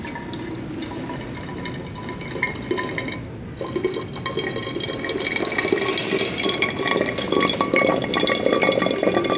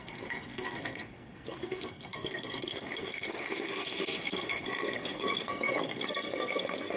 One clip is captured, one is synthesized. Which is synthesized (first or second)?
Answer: second